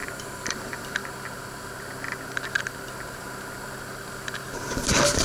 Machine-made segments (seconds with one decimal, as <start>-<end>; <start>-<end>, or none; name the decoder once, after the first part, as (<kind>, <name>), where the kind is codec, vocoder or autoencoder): 0.0-1.0 (vocoder, BigVGAN v2); 4.1-5.2